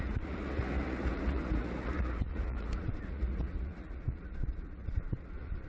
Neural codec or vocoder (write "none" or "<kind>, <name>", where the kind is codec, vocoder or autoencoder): vocoder, Vocos